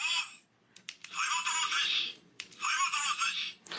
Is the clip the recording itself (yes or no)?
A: no